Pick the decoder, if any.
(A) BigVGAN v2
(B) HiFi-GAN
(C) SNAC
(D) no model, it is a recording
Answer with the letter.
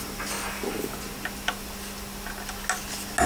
D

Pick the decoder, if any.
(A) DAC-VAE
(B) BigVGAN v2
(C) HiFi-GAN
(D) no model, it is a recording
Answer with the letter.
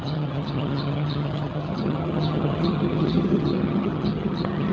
C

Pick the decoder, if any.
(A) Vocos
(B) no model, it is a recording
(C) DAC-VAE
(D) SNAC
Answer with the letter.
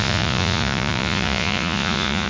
A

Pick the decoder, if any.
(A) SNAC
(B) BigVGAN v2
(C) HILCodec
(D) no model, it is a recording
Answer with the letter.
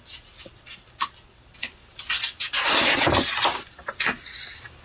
D